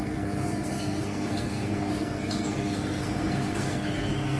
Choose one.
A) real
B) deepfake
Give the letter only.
B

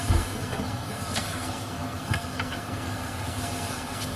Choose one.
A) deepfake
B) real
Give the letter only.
A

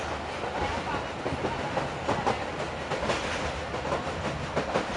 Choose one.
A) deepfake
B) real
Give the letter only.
B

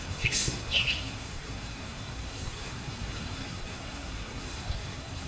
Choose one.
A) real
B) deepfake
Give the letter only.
B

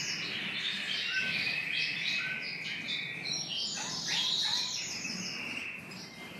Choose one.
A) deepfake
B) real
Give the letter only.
B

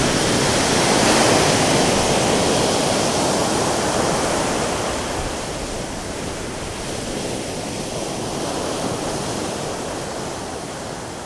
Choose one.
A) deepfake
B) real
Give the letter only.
B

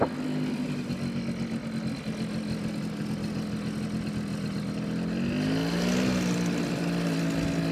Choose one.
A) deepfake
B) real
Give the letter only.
B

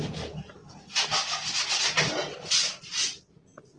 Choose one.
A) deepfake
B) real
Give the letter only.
B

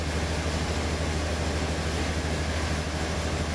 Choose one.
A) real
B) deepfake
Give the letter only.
A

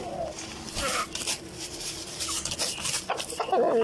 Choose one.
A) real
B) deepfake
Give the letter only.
A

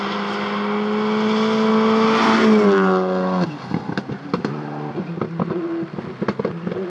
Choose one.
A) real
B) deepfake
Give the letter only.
A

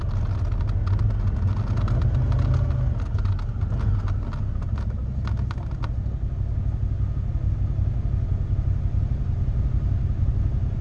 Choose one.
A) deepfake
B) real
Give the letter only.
B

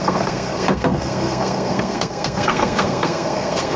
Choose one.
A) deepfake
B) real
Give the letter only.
A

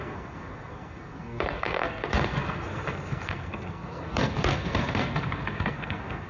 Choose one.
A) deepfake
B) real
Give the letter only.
A